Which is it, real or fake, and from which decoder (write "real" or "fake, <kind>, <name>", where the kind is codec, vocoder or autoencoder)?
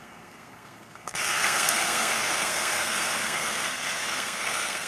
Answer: fake, codec, SNAC